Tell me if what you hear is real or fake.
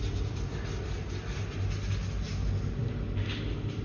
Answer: real